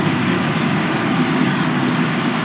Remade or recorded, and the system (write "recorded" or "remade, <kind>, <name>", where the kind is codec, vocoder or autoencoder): remade, codec, DAC